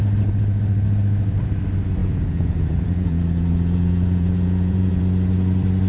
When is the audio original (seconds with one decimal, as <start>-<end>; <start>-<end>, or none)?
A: 0.0-2.0; 5.0-5.9